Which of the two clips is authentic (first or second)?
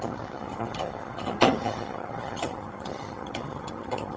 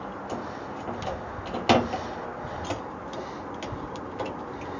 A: second